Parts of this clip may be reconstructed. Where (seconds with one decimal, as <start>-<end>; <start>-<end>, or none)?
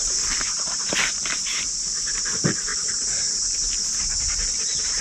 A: 0.0-1.5; 2.2-2.7; 4.0-5.0